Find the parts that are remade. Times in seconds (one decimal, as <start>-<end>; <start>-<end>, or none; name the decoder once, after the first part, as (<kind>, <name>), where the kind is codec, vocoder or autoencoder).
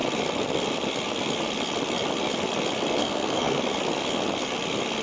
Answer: 3.0-3.6 (codec, SNAC)